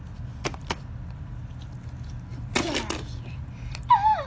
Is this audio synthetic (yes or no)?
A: no